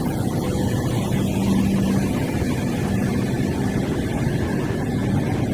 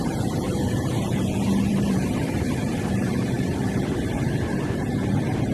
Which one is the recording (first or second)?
first